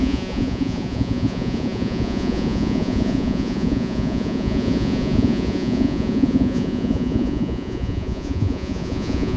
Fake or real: fake